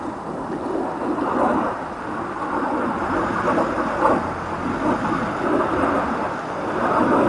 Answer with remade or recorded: recorded